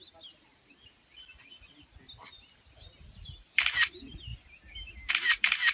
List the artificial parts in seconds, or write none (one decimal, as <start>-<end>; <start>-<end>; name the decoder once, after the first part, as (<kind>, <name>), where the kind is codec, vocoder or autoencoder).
none

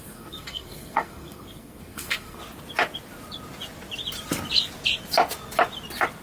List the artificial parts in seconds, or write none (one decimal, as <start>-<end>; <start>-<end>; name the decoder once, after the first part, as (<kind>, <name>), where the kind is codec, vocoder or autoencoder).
0.0-2.4 (codec, SNAC)

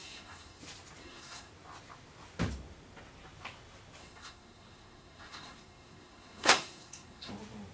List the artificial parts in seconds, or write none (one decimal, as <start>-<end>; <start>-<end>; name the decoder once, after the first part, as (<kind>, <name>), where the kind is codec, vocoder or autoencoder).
0.0-0.6 (codec, SNAC); 1.0-1.5; 4.0-7.3

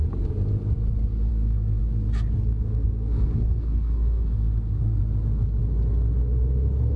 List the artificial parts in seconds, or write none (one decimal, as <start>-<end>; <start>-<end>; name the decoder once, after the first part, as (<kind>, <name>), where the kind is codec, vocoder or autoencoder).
1.3-1.8 (codec, SNAC); 2.5-5.0

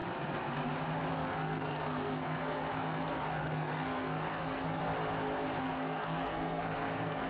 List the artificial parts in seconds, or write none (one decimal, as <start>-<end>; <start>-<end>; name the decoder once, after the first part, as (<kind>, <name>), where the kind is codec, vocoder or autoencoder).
1.1-4.8 (codec, SNAC); 5.6-7.3